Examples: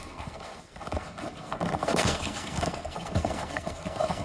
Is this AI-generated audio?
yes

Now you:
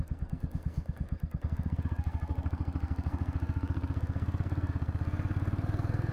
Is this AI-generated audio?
yes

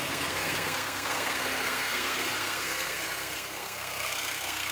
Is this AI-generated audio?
yes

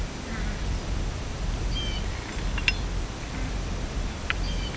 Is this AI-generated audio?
no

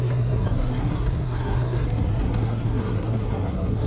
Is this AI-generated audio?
yes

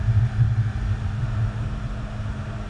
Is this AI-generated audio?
no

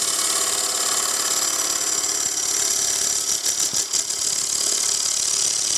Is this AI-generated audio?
no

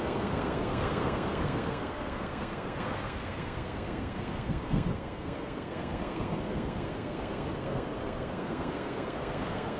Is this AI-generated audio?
yes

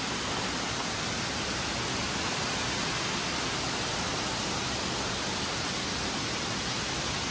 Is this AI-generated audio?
no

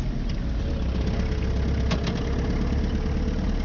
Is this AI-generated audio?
no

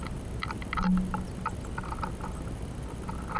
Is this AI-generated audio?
no